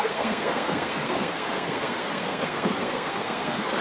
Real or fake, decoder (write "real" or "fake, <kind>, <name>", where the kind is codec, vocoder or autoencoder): fake, codec, SNAC